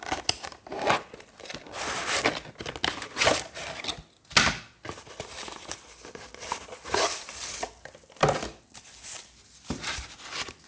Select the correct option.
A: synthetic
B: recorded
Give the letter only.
B